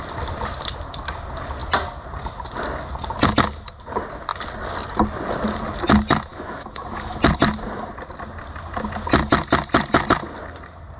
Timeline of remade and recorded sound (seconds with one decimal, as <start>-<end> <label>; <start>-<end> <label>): 0.0-6.3 recorded; 6.3-7.2 remade; 7.2-11.0 recorded